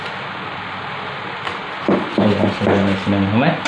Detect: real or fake real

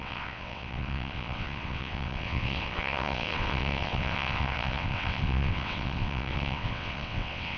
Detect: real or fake fake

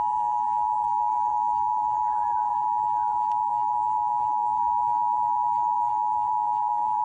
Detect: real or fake fake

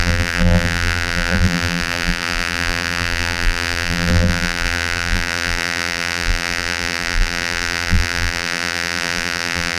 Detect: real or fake fake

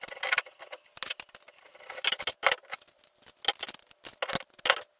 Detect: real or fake real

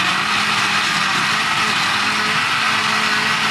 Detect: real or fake real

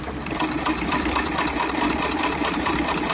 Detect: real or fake real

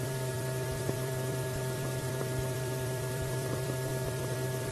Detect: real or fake fake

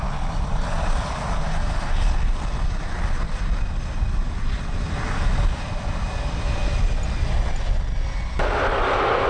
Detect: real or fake real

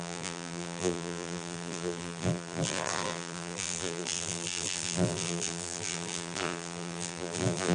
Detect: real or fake fake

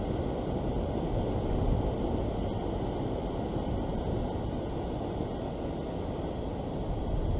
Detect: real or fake real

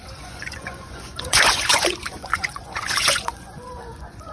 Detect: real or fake fake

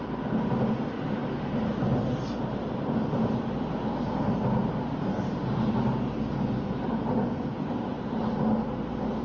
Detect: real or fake real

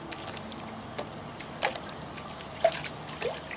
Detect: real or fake real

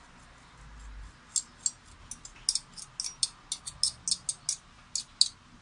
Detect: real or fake real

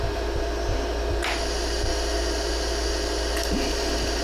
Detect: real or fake real